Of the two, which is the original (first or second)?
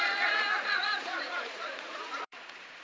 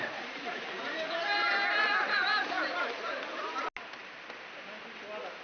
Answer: second